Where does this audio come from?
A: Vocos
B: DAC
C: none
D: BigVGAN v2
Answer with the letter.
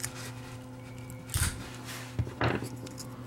C